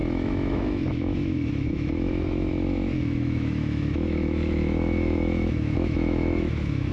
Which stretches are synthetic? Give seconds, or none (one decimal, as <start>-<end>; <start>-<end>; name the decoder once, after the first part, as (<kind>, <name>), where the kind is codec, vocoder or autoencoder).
0.0-6.9 (autoencoder, DAC-VAE)